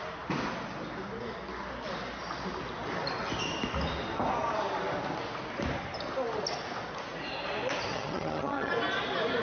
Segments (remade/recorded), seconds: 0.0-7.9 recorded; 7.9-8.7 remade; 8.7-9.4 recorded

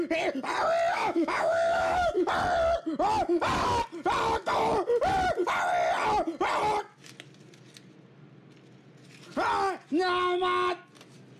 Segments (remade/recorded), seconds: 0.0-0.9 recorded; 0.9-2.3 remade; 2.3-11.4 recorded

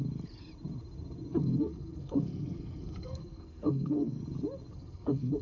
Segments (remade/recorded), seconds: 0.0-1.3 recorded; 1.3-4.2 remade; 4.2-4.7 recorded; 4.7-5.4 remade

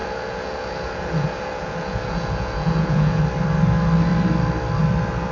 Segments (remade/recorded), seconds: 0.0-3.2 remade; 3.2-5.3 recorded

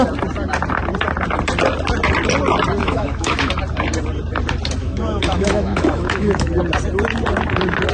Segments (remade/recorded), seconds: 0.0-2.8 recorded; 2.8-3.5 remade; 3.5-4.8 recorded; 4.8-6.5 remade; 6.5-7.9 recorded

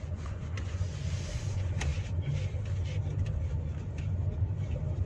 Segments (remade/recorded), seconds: 0.0-1.9 remade; 1.9-5.0 recorded

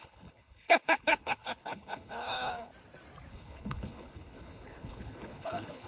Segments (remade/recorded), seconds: 0.0-2.7 remade; 2.7-3.3 recorded; 3.3-5.9 remade

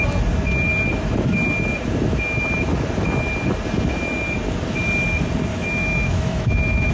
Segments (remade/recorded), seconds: 0.0-5.5 recorded; 5.5-6.9 remade